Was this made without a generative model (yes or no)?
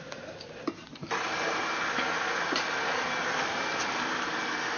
no